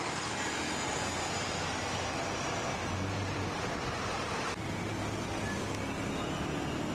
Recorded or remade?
recorded